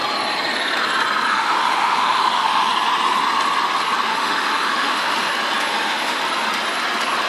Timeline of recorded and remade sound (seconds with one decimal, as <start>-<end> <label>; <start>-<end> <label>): 0.0-1.3 recorded; 1.3-2.7 remade; 2.7-4.1 recorded; 4.1-5.3 remade; 5.3-5.7 recorded; 5.7-6.2 remade; 6.2-7.3 recorded